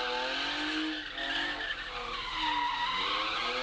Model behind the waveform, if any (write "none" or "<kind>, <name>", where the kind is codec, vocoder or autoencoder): none